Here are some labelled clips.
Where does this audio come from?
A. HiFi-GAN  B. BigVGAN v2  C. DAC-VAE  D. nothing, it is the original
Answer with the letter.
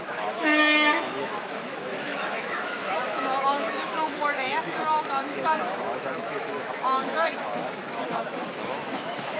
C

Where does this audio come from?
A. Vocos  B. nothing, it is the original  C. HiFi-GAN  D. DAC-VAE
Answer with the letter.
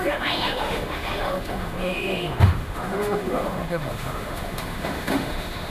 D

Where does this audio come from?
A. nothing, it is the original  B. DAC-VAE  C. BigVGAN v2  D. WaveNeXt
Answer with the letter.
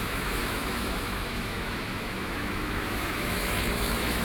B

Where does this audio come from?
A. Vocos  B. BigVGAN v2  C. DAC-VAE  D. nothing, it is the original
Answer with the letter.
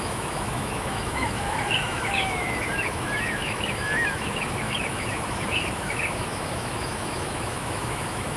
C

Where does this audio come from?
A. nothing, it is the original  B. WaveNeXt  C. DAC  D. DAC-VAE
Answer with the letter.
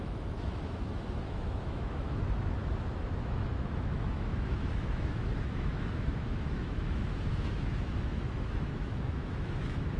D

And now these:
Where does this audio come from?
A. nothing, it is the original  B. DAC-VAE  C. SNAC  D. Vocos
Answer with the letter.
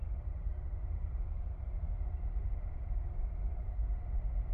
A